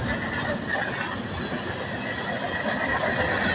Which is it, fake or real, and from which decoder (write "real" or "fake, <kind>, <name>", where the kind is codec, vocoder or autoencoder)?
real